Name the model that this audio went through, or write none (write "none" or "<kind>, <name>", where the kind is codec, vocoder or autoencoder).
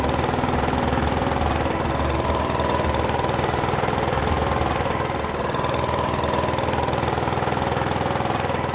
none